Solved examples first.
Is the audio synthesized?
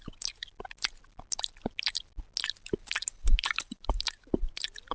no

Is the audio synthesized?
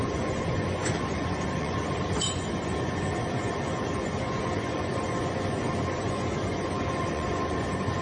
yes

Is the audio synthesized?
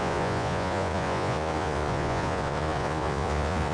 yes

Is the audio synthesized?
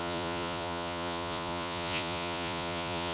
yes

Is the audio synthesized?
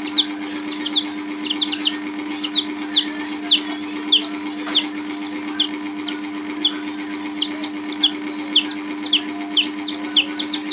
no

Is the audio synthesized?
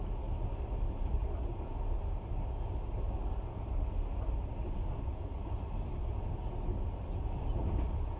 no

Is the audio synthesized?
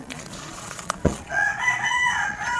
yes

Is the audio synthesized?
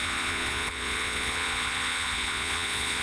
yes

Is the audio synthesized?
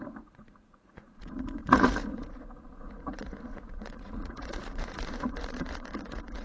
yes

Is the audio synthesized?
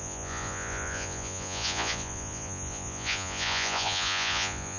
yes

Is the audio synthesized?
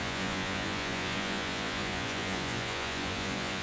yes